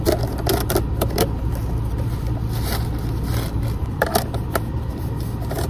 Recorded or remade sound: recorded